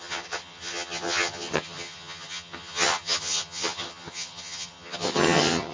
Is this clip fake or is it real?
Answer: fake